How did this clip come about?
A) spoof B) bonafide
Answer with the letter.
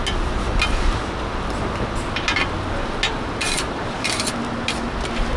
B